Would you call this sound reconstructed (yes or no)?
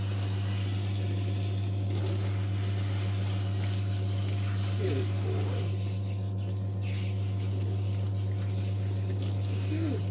no